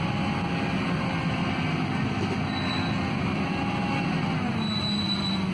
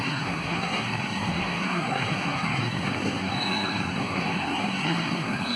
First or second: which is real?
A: first